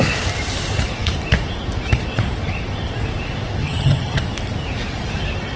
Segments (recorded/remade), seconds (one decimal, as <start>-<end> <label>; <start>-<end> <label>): 0.0-3.6 recorded; 3.6-4.2 remade; 4.2-5.6 recorded

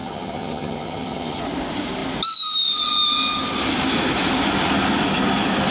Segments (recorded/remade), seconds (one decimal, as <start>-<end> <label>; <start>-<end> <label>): 0.0-1.4 remade; 1.4-5.7 recorded

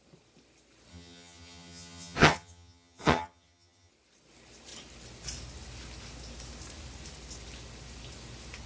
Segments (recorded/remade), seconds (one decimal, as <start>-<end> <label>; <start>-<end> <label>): 0.0-0.9 recorded; 0.9-3.9 remade; 3.9-8.7 recorded

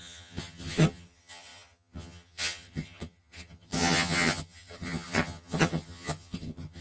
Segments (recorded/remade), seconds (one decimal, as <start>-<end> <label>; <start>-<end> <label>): 0.0-6.8 remade

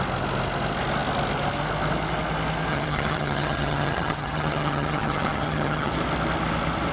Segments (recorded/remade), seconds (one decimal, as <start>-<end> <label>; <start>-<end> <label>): 0.0-2.7 recorded; 2.7-5.9 remade; 5.9-6.9 recorded

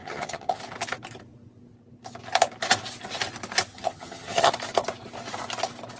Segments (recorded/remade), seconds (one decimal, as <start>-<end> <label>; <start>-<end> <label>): 0.0-0.6 remade; 0.6-3.7 recorded; 3.7-4.5 remade; 4.5-6.0 recorded

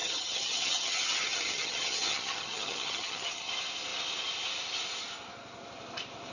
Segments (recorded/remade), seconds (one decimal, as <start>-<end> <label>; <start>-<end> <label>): 0.0-3.5 remade; 3.5-6.3 recorded

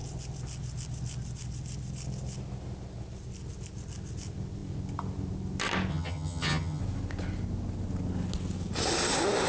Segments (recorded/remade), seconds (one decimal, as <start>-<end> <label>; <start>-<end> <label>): 0.0-5.9 recorded; 5.9-6.8 remade; 6.8-9.5 recorded